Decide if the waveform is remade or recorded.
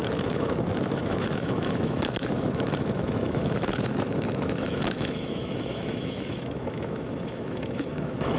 remade